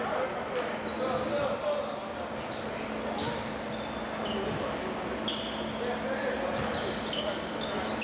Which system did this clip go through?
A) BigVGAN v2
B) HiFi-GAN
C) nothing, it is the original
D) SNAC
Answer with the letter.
C